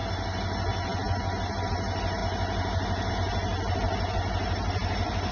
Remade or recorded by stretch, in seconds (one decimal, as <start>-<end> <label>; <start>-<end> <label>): 0.0-5.3 recorded